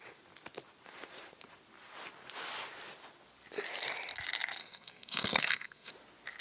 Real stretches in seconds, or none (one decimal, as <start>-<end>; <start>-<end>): 0.0-4.6; 5.9-6.4